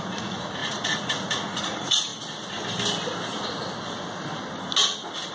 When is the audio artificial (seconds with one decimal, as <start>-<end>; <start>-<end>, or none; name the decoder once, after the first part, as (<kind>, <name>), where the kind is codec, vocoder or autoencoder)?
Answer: 0.0-2.1 (vocoder, Vocos)